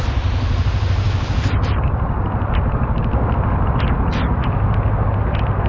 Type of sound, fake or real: real